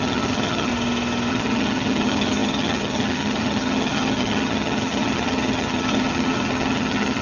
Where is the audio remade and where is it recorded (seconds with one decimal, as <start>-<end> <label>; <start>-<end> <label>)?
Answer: 0.0-0.7 remade; 0.7-1.3 recorded; 1.3-7.2 remade